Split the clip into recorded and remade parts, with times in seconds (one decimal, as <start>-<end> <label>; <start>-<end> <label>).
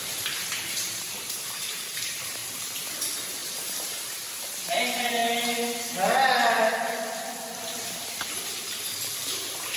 0.0-2.4 remade; 2.4-3.0 recorded; 3.0-5.2 remade; 5.2-8.0 recorded; 8.0-9.8 remade